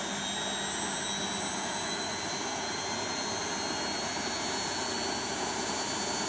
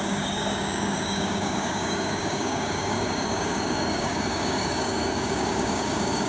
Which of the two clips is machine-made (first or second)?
second